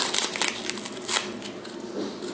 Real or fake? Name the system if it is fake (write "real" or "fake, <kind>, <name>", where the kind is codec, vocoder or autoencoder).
real